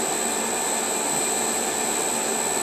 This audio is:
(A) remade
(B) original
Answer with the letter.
B